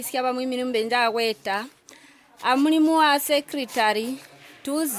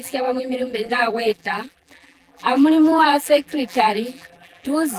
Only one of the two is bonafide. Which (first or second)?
first